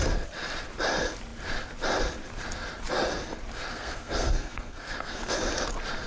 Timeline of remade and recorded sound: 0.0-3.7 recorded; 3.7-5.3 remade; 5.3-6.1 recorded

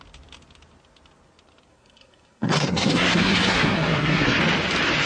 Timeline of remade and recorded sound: 0.0-1.7 recorded; 1.7-4.4 remade; 4.4-5.1 recorded

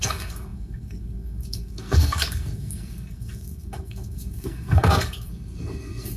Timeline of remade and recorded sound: 0.0-6.2 remade

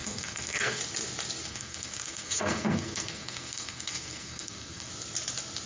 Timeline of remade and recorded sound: 0.0-0.8 remade; 0.8-1.5 recorded; 1.5-4.9 remade; 4.9-5.7 recorded

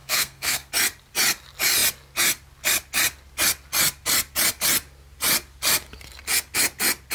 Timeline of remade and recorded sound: 0.0-0.7 remade; 0.7-7.1 recorded